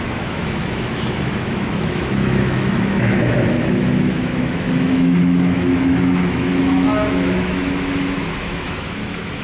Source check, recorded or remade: remade